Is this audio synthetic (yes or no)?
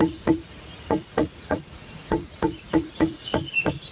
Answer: yes